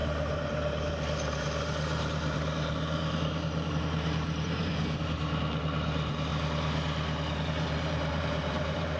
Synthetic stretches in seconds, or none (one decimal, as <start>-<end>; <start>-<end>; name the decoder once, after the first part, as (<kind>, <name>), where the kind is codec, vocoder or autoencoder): 0.0-6.3 (vocoder, BigVGAN v2); 7.3-9.0

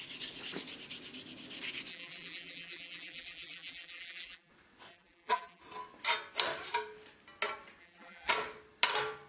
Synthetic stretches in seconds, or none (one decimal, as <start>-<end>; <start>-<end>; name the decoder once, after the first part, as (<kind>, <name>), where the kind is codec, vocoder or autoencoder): 1.9-4.5 (vocoder, BigVGAN v2); 4.9-5.6; 7.8-8.3

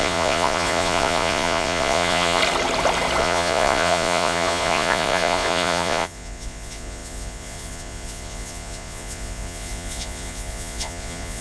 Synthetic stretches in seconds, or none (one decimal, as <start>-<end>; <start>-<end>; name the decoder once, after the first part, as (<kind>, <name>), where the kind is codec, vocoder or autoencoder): 0.0-2.4 (vocoder, Vocos); 3.2-11.4

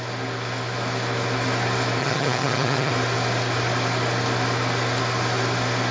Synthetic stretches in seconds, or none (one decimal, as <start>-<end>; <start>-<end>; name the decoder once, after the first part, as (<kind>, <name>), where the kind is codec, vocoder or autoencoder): 2.0-2.9 (vocoder, HiFi-GAN)

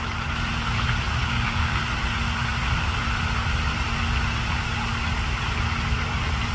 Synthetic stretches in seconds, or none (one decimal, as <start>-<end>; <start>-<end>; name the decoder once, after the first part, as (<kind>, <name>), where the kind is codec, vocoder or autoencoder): 1.2-1.8 (codec, DAC)

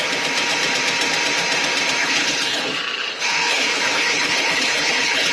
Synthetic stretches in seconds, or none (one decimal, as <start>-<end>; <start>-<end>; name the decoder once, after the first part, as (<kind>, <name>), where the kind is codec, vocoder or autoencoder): 2.0-2.6 (codec, HILCodec); 3.1-5.3